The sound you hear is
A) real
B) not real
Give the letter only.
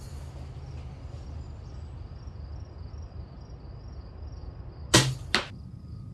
A